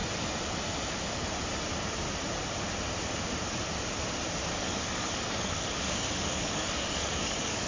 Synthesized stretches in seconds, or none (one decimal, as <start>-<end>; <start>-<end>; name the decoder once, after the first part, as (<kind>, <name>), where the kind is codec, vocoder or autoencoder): 4.6-7.7 (codec, DAC)

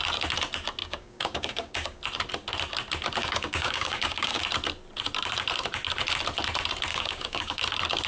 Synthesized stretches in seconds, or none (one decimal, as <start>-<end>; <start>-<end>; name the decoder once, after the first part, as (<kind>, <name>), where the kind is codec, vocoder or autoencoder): 0.8-2.0 (codec, DAC); 3.2-4.4; 6.9-7.6

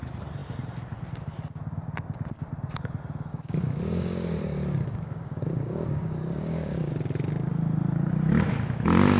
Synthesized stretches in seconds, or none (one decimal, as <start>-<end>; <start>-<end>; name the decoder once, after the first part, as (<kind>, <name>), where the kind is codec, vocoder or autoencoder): 3.3-6.9 (codec, DAC)

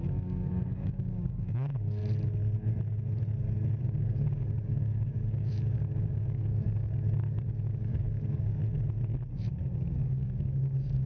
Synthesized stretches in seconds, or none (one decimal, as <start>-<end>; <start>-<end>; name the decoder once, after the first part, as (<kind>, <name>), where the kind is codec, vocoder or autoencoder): 0.0-2.0 (codec, DAC); 3.8-8.6; 9.8-11.1

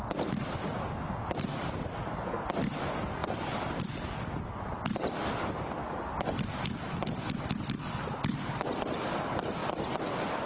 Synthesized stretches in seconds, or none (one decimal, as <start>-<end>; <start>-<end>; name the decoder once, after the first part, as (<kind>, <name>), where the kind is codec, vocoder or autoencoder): none

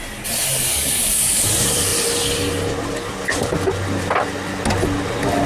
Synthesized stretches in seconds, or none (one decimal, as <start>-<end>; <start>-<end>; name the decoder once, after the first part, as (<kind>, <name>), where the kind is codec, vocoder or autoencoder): 0.7-1.5 (codec, DAC)

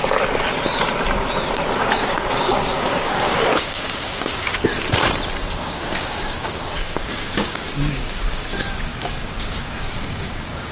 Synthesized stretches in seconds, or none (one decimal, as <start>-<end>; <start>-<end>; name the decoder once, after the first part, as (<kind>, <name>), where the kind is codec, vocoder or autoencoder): 1.8-4.7 (codec, DAC); 5.5-10.7

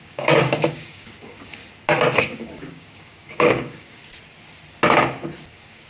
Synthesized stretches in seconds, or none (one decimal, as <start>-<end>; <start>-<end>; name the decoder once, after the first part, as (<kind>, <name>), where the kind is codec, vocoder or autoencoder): 0.0-1.6 (codec, DAC); 2.2-4.0; 5.5-5.9